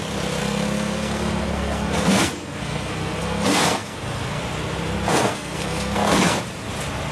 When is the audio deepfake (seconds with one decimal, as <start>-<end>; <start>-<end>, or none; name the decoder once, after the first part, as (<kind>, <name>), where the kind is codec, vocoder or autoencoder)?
0.4-4.4 (codec, SNAC); 5.1-6.4